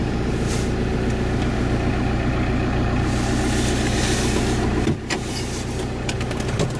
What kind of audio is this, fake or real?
real